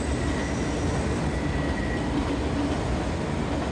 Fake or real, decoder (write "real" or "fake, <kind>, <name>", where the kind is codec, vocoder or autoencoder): real